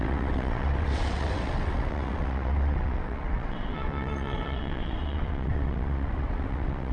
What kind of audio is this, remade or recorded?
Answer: remade